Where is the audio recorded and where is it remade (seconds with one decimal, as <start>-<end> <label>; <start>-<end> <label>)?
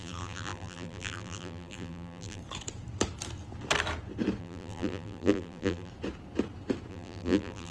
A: 0.0-2.4 remade; 2.4-4.4 recorded; 4.4-5.9 remade; 5.9-6.9 recorded; 6.9-7.7 remade